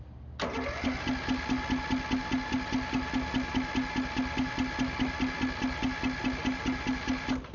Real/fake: real